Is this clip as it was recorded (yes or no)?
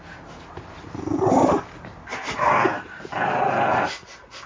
yes